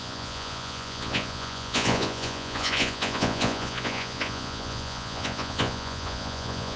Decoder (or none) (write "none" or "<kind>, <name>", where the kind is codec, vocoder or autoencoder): vocoder, Vocos